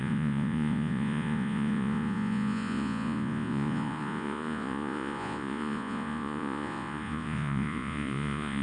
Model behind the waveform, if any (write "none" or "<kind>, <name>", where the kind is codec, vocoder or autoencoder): vocoder, Vocos